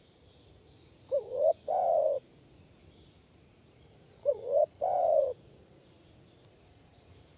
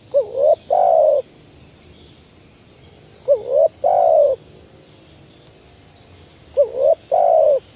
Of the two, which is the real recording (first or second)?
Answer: second